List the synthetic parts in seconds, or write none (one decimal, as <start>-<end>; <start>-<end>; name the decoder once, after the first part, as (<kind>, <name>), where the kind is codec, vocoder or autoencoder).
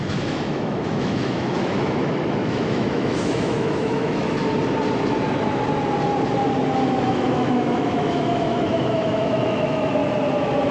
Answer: 0.0-4.4 (autoencoder, DAC-VAE); 7.1-10.0